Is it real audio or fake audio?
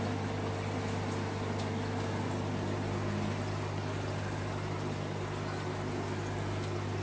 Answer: real